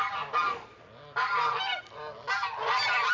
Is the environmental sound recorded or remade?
recorded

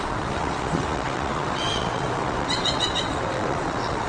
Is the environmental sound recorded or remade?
remade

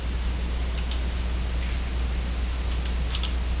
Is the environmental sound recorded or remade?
recorded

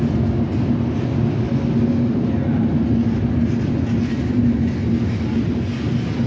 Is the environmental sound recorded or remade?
recorded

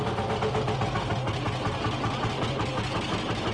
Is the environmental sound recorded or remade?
recorded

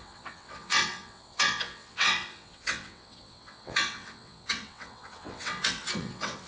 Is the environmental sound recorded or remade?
remade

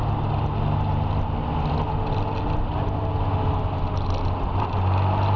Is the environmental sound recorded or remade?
recorded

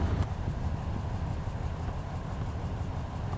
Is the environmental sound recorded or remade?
recorded